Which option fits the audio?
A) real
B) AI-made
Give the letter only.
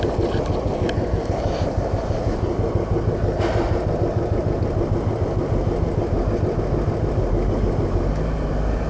A